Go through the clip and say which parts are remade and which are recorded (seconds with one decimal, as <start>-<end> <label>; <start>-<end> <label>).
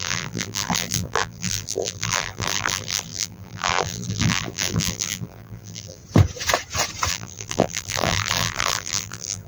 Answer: 0.0-6.0 remade; 6.0-7.1 recorded; 7.1-9.5 remade